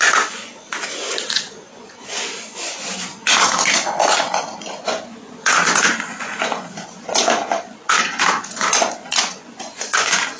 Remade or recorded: remade